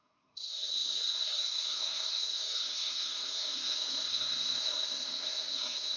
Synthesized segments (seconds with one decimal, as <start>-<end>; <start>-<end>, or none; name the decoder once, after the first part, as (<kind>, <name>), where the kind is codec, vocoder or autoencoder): 0.0-6.0 (codec, SNAC)